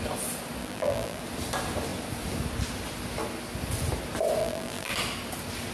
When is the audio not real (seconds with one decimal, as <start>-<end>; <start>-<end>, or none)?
0.6-1.2; 4.4-4.9